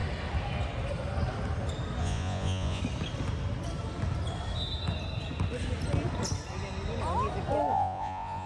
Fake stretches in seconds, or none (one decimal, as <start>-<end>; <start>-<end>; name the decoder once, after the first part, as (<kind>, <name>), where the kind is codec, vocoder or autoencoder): 2.0-2.8 (vocoder, Vocos); 7.7-8.5